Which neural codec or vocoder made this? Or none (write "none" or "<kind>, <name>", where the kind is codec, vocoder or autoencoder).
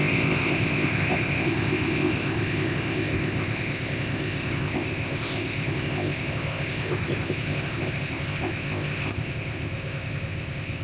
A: codec, ZipCodec